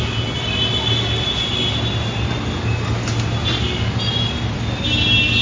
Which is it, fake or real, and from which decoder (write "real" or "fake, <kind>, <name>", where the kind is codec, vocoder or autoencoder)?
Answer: real